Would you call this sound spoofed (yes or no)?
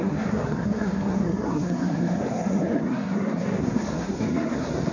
yes